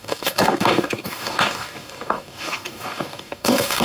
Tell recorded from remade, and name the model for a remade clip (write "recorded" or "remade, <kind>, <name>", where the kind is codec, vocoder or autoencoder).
remade, codec, DAC